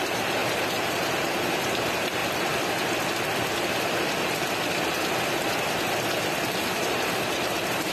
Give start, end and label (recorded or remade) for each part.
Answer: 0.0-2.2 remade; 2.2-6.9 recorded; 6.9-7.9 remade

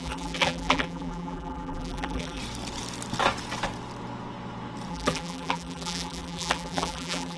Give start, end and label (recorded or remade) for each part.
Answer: 0.0-2.4 remade; 2.4-4.9 recorded; 4.9-7.4 remade

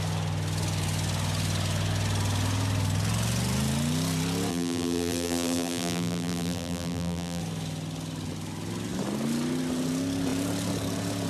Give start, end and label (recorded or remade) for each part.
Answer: 0.0-4.5 recorded; 4.5-7.4 remade; 7.4-11.3 recorded